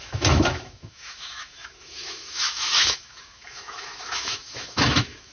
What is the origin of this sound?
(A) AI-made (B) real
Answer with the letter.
A